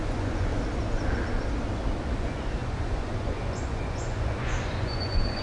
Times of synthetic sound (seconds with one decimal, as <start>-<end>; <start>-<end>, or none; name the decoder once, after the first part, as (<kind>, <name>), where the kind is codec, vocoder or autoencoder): 0.0-0.5 (vocoder, Vocos); 2.2-5.4